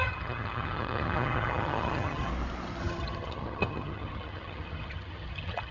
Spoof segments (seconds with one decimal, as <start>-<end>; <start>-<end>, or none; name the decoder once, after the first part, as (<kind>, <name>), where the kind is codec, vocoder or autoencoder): 0.0-2.3 (vocoder, HiFi-GAN); 2.8-5.7